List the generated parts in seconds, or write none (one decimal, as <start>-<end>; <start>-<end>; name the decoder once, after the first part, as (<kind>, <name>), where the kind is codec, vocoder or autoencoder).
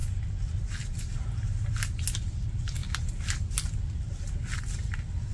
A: none